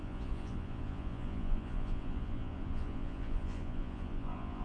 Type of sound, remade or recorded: remade